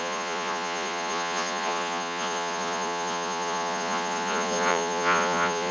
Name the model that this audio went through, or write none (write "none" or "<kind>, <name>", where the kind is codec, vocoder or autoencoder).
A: vocoder, Vocos